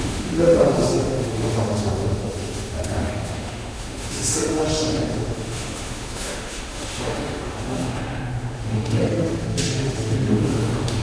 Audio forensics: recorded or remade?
remade